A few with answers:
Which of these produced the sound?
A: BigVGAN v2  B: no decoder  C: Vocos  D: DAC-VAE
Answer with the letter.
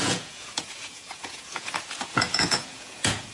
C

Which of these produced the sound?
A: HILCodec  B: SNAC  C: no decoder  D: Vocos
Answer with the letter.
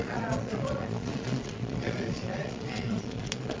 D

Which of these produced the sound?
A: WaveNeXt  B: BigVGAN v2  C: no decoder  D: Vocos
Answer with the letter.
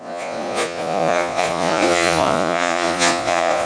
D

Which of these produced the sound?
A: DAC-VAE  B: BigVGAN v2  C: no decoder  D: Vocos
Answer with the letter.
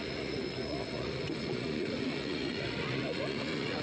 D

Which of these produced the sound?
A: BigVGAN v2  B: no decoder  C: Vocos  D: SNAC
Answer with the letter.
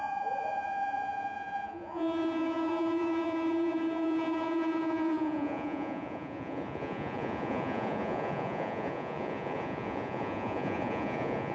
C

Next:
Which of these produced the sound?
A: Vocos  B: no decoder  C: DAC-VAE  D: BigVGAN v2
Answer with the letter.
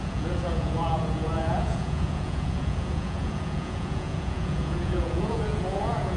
A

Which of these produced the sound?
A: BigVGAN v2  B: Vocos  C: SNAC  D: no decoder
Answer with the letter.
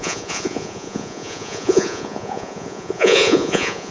B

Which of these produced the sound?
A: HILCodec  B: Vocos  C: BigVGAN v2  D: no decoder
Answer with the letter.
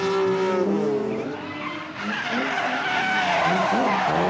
D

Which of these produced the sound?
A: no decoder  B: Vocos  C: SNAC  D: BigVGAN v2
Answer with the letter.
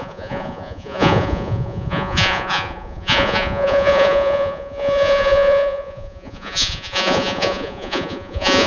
B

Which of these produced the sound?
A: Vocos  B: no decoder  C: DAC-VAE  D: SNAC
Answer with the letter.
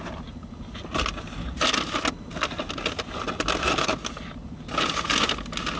B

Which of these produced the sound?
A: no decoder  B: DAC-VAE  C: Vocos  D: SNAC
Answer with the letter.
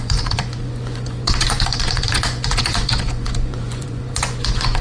C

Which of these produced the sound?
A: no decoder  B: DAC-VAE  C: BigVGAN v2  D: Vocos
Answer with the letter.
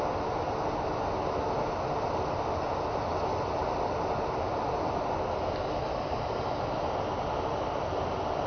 A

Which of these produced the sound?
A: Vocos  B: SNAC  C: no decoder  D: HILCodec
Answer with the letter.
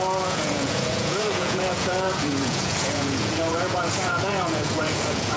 A